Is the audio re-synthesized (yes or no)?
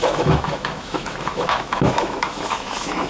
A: yes